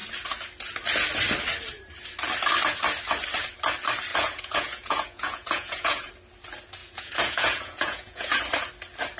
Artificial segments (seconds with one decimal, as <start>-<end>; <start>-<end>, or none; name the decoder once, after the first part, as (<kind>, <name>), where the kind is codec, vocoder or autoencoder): 4.1-6.1 (vocoder, Vocos); 6.8-8.4